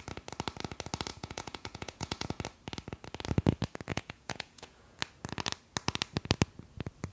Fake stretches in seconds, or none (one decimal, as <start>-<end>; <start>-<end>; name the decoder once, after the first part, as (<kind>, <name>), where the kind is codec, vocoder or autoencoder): 1.1-2.4 (vocoder, Vocos); 3.9-5.0